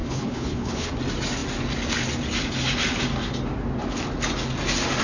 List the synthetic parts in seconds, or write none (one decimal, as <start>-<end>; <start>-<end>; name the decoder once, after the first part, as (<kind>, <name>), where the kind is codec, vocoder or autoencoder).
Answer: 0.0-0.9 (codec, HILCodec)